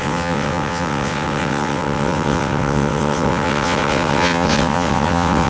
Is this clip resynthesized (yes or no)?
yes